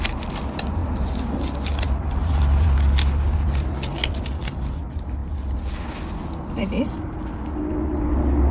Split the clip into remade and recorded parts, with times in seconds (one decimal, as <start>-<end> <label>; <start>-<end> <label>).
0.0-8.5 recorded